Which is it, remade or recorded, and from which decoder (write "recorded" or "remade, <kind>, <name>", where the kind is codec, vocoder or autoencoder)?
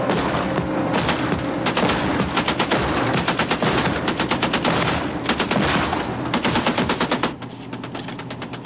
recorded